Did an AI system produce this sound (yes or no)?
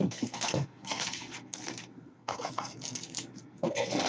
yes